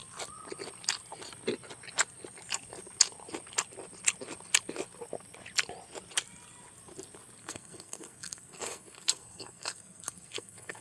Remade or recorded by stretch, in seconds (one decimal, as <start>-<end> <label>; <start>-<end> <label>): 0.0-7.4 recorded; 7.4-10.8 remade

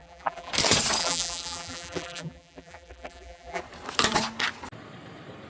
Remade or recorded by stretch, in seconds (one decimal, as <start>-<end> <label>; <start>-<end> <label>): 0.0-0.5 remade; 0.5-1.0 recorded; 1.0-3.6 remade; 3.6-5.5 recorded

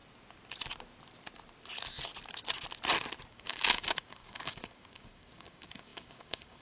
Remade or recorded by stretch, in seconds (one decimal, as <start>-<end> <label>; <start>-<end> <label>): 0.0-3.3 recorded; 3.3-6.6 remade

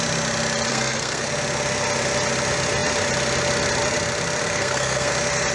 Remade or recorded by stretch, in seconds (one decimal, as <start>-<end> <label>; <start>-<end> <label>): 0.0-0.7 recorded; 0.7-1.3 remade; 1.3-4.4 recorded; 4.4-5.1 remade; 5.1-5.5 recorded

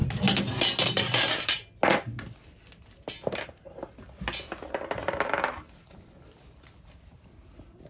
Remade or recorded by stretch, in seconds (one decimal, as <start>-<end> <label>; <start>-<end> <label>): 0.0-7.9 recorded